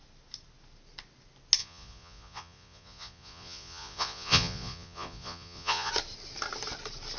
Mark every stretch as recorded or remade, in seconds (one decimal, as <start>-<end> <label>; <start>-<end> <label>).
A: 0.0-1.6 recorded; 1.6-5.9 remade; 5.9-7.2 recorded